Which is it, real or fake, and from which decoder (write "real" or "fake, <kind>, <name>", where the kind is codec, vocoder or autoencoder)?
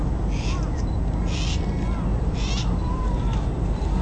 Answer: real